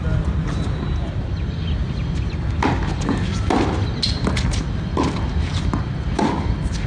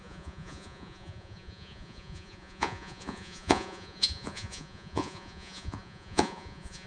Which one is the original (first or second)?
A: first